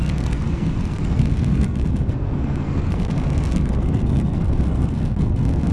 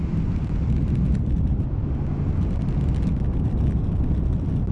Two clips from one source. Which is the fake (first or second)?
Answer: first